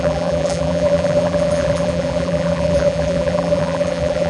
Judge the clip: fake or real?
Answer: fake